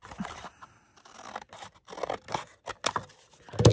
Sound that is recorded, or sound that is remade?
recorded